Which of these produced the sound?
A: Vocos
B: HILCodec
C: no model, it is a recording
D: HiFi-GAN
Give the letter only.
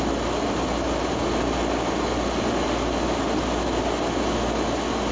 C